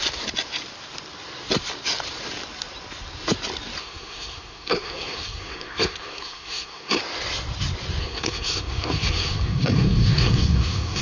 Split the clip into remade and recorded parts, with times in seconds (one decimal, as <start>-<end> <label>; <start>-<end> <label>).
0.0-3.8 recorded; 3.8-7.0 remade; 7.0-8.0 recorded; 8.0-11.0 remade